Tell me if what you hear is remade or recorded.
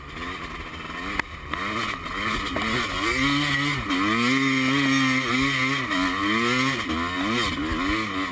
recorded